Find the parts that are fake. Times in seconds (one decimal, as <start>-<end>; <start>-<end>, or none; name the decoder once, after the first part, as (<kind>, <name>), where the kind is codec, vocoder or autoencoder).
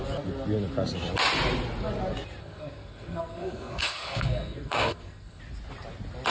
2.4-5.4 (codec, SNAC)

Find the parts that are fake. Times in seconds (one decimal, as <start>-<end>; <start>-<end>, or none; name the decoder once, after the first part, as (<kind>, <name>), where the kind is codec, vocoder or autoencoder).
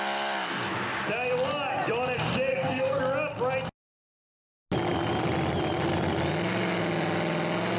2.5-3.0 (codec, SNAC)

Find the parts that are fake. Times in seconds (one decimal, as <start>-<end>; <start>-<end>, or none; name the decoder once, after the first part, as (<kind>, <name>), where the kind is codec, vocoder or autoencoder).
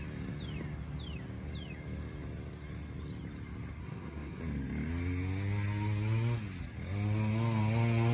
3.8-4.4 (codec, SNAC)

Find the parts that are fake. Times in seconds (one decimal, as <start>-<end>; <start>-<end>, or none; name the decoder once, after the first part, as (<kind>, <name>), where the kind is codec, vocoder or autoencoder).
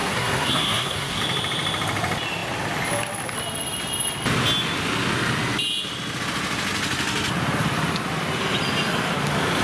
0.0-1.2 (codec, SNAC)